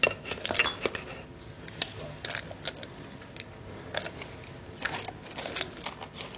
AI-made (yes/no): no